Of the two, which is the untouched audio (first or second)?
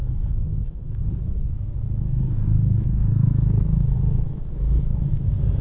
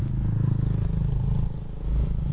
second